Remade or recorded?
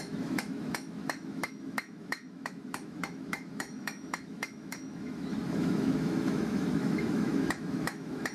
remade